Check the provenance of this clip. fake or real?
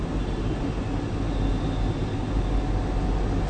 real